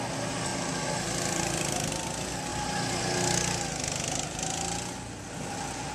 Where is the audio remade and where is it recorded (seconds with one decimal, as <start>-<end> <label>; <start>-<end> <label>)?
0.0-0.5 recorded; 0.5-1.9 remade; 1.9-2.5 recorded; 2.5-3.0 remade; 3.0-5.9 recorded